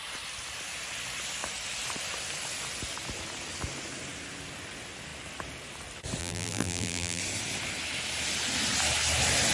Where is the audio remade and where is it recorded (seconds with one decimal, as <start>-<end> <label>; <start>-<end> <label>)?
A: 0.0-6.2 recorded; 6.2-7.2 remade; 7.2-9.5 recorded